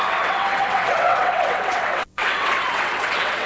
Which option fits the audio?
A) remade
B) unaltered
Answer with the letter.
A